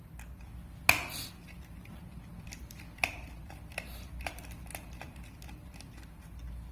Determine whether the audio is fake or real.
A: real